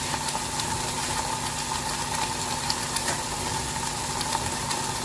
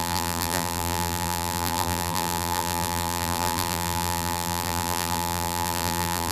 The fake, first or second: second